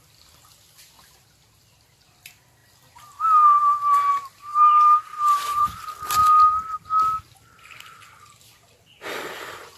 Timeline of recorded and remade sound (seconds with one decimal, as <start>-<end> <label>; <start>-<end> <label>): 0.0-4.5 recorded; 4.5-5.8 remade; 5.8-9.8 recorded